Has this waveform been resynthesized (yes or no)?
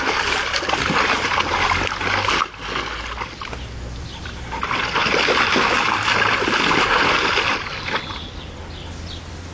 no